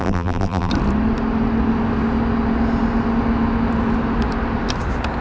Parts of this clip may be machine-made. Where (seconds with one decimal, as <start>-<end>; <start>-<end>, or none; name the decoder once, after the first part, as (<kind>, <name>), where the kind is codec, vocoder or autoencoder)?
0.0-0.7 (vocoder, BigVGAN v2)